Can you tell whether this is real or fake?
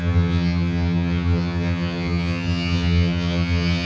fake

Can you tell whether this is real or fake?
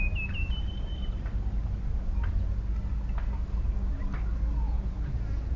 real